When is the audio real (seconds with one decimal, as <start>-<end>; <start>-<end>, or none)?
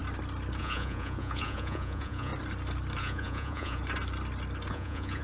0.0-0.6; 2.3-3.0; 3.8-4.7